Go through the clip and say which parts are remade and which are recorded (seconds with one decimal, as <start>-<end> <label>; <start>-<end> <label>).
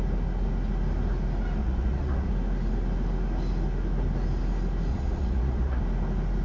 0.0-1.6 recorded; 1.6-2.3 remade; 2.3-4.9 recorded; 4.9-5.8 remade; 5.8-6.4 recorded